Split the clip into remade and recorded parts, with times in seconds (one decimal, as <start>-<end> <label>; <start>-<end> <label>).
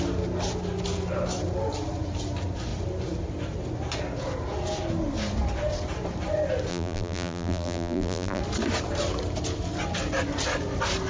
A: 0.0-6.7 recorded; 6.7-8.4 remade; 8.4-11.1 recorded